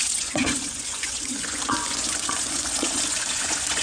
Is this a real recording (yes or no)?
no